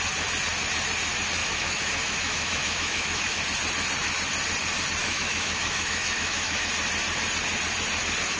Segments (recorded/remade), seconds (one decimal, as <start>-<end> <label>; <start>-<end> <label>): 0.0-1.4 recorded; 1.4-3.4 remade; 3.4-5.0 recorded; 5.0-6.7 remade; 6.7-8.4 recorded